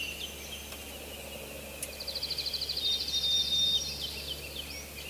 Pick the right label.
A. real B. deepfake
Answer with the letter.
A